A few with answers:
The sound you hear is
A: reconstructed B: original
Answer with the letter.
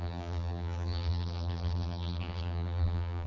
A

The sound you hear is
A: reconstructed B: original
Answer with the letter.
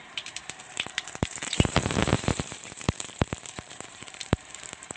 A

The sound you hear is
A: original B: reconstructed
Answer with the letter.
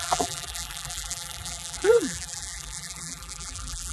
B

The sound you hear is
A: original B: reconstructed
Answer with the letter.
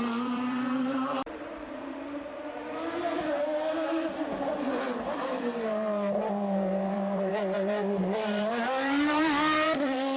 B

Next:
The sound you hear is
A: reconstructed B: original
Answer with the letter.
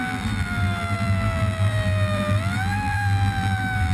A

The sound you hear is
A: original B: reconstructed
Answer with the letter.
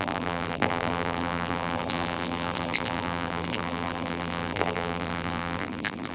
B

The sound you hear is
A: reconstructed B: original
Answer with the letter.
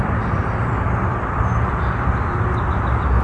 A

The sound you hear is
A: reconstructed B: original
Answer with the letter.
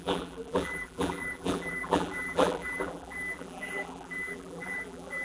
A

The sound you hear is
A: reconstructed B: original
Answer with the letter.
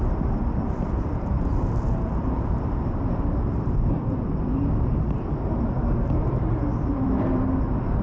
A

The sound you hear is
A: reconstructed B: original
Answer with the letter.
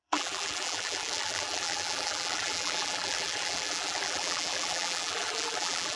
A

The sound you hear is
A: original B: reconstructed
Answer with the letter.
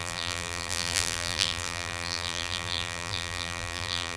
B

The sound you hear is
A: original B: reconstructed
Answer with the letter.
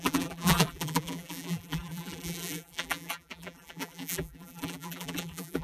B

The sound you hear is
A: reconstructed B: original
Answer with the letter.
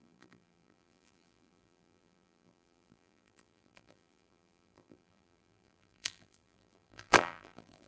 A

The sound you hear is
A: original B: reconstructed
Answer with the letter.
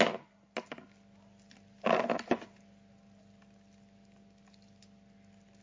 A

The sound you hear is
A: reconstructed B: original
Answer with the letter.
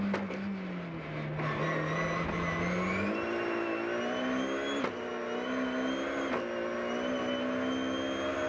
B